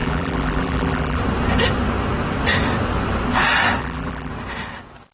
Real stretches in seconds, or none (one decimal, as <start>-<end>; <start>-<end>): 1.2-3.8; 4.3-5.1